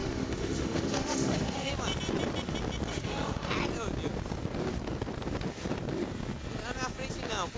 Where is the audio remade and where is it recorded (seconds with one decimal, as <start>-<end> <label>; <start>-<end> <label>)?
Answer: 0.0-1.7 remade; 1.7-2.9 recorded; 2.9-3.5 remade; 3.5-7.6 recorded